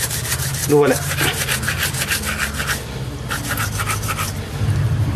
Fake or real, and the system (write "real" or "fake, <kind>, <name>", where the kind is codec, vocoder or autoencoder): real